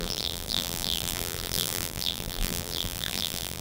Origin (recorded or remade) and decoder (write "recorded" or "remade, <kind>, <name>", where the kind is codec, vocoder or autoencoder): remade, vocoder, BigVGAN v2